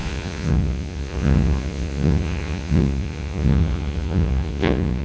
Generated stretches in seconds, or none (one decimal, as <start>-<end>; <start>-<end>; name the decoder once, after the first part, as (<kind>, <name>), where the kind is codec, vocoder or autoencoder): 0.0-5.0 (vocoder, Vocos)